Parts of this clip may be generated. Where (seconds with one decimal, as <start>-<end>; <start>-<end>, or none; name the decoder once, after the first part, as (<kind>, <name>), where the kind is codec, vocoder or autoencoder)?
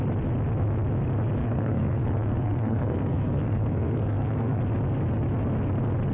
1.4-4.6 (codec, SNAC)